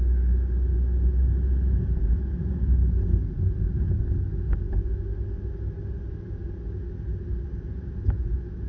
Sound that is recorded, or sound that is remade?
recorded